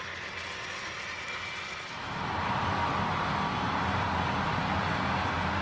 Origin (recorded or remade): recorded